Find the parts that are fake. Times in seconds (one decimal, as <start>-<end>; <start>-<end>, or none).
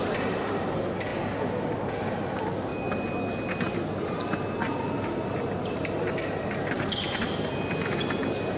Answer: none